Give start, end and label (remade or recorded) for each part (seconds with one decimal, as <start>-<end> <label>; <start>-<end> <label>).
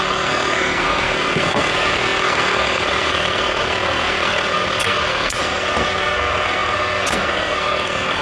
0.0-8.2 remade